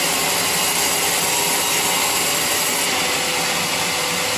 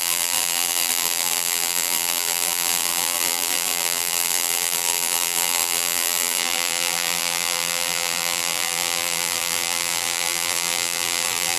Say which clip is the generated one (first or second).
second